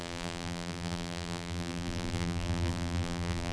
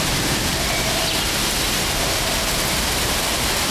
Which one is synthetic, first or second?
first